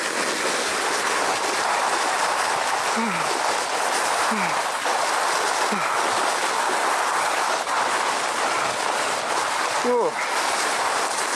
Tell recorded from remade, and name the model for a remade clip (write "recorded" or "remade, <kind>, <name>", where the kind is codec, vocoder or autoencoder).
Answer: recorded